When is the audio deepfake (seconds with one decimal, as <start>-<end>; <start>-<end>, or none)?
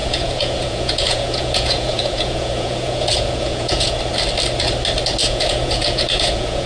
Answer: 0.0-4.0; 5.2-6.7